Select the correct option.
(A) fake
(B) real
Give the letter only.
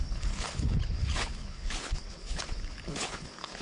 A